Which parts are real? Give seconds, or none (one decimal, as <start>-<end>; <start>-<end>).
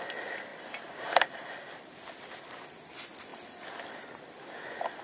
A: 0.0-0.5; 1.5-5.0